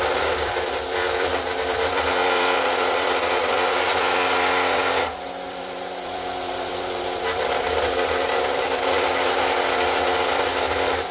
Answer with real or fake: fake